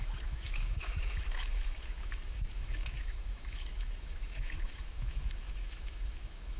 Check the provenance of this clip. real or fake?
fake